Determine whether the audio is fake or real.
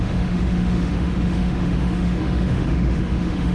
fake